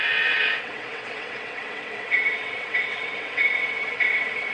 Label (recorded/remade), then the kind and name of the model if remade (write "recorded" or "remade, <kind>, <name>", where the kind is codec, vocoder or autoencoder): remade, vocoder, WaveNeXt